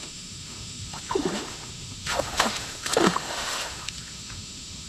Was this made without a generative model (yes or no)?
no